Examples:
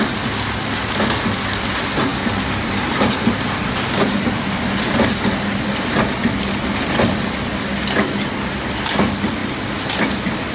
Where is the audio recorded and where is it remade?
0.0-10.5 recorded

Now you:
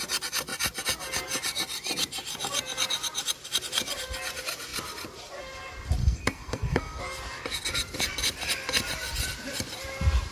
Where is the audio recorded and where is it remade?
0.0-6.0 recorded; 6.0-7.0 remade; 7.0-10.3 recorded

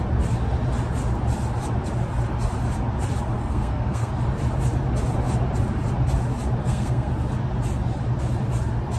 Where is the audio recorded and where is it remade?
0.0-3.4 recorded; 3.4-4.1 remade; 4.1-6.6 recorded; 6.6-7.1 remade; 7.1-9.0 recorded

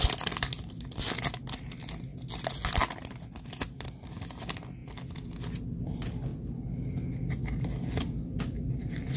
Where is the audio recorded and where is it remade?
0.0-9.2 recorded

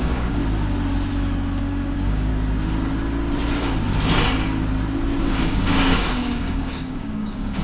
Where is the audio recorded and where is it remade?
0.0-0.4 remade; 0.4-1.6 recorded; 1.6-2.3 remade; 2.3-5.2 recorded; 5.2-7.6 remade

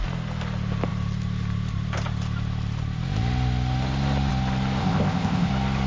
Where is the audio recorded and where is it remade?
0.0-4.8 recorded; 4.8-5.5 remade; 5.5-5.9 recorded

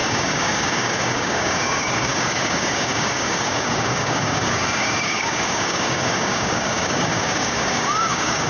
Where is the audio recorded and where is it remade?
0.0-8.5 remade

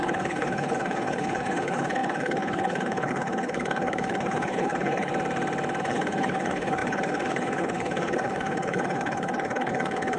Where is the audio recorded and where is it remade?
0.0-5.1 remade; 5.1-5.8 recorded; 5.8-10.2 remade